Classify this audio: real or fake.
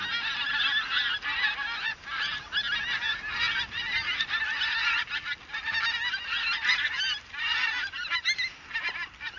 real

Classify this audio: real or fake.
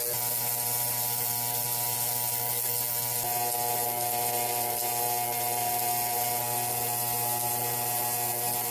real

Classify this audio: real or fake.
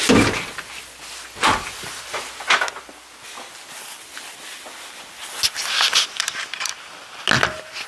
real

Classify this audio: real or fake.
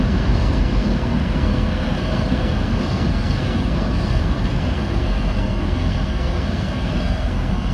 fake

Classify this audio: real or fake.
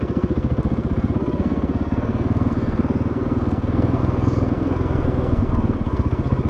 fake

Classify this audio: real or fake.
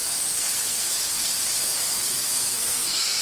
fake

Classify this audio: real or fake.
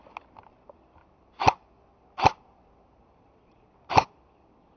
real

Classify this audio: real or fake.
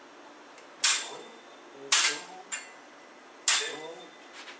real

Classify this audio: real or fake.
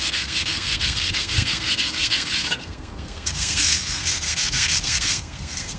fake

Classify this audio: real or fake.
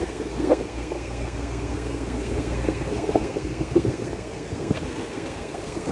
fake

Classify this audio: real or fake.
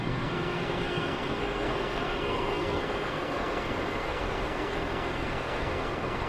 fake